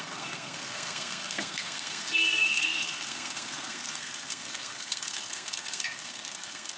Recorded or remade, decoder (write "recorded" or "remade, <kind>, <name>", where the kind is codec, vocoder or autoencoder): remade, codec, SNAC